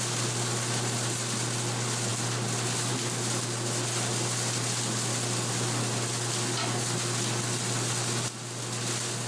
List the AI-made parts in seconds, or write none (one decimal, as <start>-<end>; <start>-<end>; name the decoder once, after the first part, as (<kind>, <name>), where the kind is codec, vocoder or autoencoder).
none